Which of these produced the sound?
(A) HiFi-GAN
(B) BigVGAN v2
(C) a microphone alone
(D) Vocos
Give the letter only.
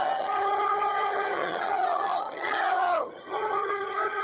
A